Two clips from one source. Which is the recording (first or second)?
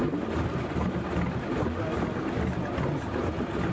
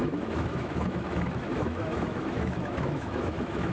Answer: first